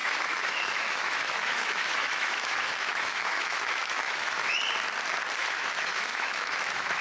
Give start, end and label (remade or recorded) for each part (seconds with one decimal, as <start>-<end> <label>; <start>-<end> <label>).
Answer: 0.0-4.6 remade; 4.6-5.4 recorded; 5.4-7.0 remade